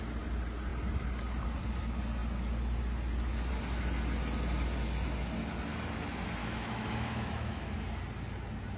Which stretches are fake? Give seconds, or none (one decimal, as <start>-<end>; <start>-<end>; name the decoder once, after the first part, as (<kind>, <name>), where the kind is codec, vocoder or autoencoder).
6.4-7.7 (autoencoder, DAC-VAE)